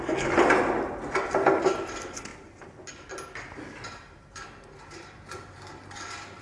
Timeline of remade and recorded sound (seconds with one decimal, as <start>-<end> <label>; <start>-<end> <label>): 0.0-6.4 recorded